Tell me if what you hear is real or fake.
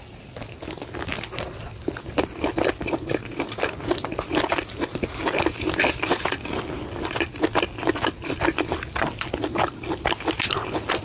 real